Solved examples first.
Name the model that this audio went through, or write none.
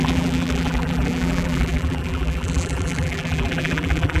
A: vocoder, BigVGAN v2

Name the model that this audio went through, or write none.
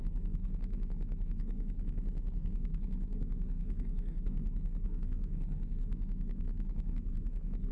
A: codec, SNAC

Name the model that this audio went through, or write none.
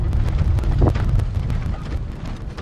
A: none